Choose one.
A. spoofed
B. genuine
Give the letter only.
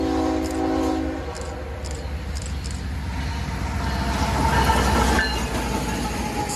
B